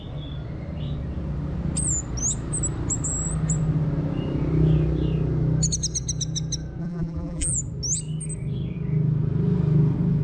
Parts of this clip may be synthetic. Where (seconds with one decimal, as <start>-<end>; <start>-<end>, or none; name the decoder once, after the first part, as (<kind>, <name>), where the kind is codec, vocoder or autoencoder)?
6.8-7.5 (vocoder, BigVGAN v2)